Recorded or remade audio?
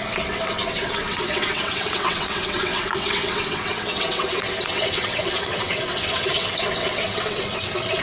remade